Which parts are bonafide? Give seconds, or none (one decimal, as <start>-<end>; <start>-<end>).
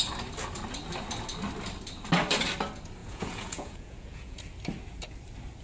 0.0-3.0; 4.4-5.6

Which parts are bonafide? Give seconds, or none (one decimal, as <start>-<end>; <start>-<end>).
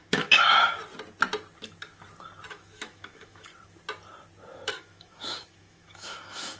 0.8-2.5; 3.5-4.7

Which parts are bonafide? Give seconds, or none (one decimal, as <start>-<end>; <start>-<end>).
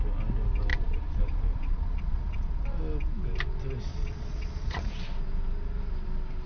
0.0-0.7; 2.5-3.9; 5.0-6.5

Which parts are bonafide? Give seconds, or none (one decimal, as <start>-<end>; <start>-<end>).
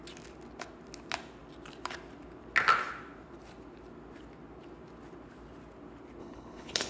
0.0-6.2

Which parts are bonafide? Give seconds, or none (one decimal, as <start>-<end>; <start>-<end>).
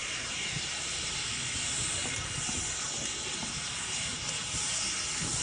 1.3-5.4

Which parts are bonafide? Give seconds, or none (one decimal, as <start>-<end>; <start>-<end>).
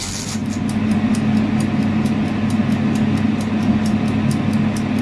0.0-5.0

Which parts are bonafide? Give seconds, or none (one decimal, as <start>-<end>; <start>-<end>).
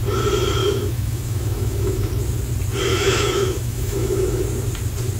0.0-0.6; 2.1-2.9; 4.4-5.2